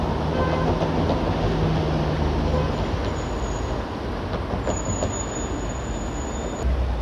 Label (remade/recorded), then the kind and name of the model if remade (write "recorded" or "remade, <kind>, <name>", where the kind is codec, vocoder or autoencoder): recorded